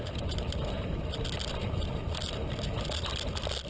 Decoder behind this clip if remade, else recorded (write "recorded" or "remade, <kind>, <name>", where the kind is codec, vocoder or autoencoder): recorded